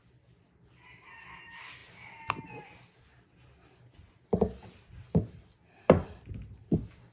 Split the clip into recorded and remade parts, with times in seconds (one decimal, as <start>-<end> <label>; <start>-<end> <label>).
0.0-7.1 recorded